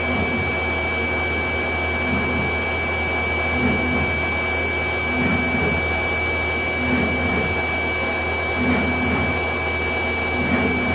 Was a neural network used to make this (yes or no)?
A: no